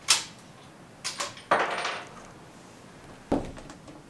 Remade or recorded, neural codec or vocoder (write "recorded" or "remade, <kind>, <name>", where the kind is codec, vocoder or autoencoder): recorded